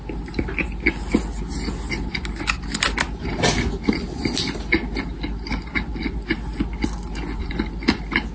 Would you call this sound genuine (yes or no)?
yes